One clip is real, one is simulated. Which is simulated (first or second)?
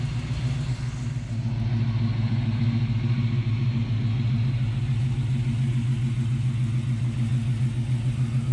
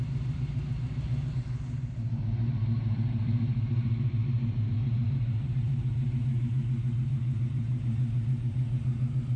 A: second